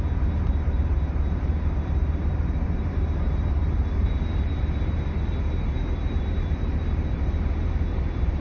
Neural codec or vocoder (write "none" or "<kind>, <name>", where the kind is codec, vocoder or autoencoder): vocoder, BigVGAN v2